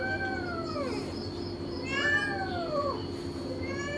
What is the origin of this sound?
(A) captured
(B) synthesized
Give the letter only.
A